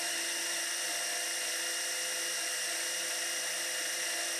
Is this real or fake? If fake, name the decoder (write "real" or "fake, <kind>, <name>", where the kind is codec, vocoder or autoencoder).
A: real